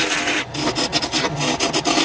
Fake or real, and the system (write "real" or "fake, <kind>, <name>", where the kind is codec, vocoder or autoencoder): real